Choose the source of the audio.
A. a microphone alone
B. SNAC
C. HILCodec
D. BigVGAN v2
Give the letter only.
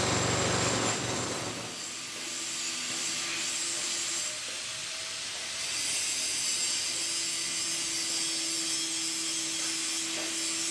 A